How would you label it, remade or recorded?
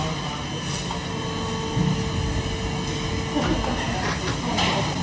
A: recorded